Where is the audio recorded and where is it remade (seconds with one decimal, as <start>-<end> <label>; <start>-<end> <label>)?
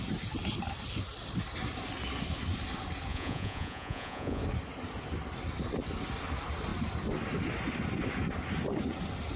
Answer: 0.0-3.1 recorded; 3.1-4.4 remade; 4.4-9.4 recorded